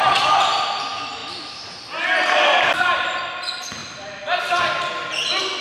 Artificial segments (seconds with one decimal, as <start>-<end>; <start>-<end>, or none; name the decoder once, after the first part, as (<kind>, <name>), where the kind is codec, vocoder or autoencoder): 3.8-4.6 (vocoder, BigVGAN v2)